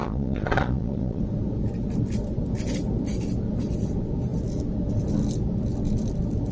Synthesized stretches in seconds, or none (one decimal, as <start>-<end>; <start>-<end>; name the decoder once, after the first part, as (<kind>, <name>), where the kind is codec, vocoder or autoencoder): 0.0-1.2 (vocoder, Vocos)